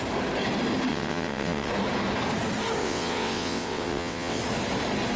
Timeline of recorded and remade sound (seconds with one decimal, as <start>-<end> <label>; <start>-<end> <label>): 0.0-0.9 recorded; 0.9-1.7 remade; 1.7-2.8 recorded; 2.8-4.4 remade; 4.4-5.2 recorded